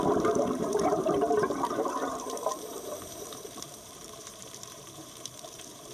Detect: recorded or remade remade